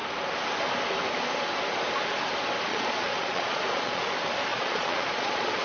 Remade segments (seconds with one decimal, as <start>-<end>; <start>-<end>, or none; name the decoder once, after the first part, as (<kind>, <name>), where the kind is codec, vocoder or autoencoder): 2.7-4.1 (vocoder, Vocos); 4.5-5.6